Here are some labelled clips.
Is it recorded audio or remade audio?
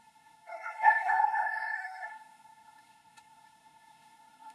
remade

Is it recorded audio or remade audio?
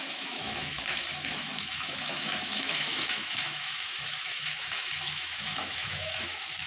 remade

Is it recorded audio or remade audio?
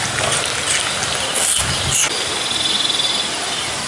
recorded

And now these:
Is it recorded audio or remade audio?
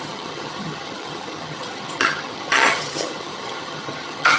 remade